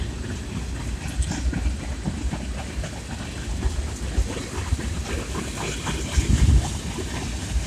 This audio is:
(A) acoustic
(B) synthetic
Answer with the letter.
A